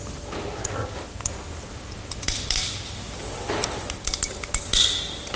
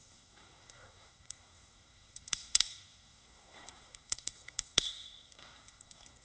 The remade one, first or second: second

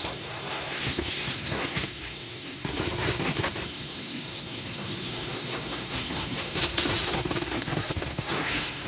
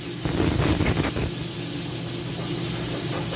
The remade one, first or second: first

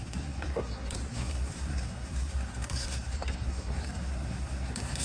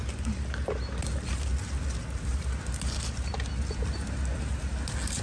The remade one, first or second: first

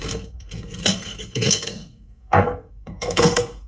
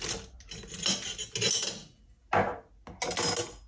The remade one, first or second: first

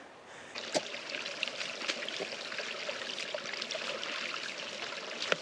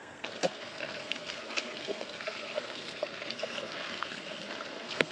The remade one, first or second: second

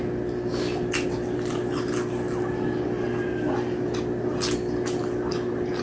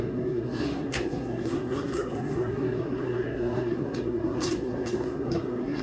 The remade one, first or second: second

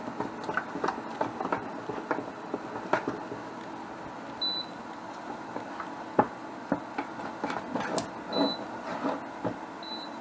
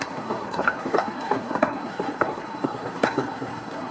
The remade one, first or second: second